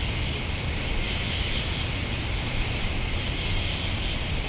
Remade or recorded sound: recorded